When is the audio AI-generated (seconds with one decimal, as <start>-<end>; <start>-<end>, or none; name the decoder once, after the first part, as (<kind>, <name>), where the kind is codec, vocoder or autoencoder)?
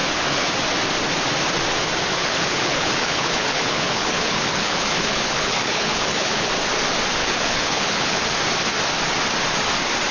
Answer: 0.0-0.5 (codec, HILCodec); 2.1-6.5; 7.2-8.2